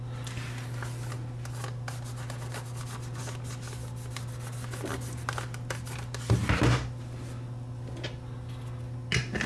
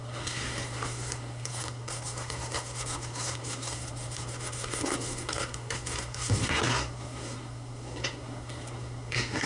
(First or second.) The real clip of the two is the first